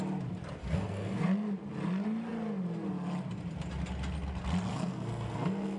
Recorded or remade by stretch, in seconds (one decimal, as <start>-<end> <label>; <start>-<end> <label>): 0.0-0.6 recorded; 0.6-1.2 remade; 1.2-4.7 recorded; 4.7-5.8 remade